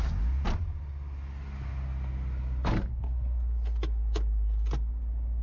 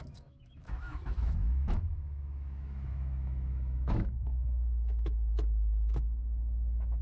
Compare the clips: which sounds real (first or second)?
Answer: first